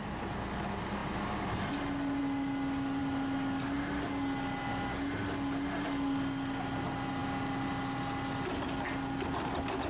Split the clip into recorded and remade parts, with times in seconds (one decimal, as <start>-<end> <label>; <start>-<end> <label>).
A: 0.0-9.9 recorded